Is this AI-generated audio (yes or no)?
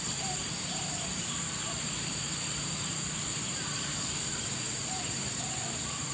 yes